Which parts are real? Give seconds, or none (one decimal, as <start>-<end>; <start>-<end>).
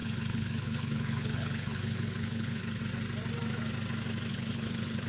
2.8-4.3